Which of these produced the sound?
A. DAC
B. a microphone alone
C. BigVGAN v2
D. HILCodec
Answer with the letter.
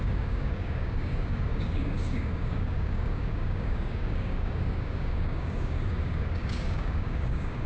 A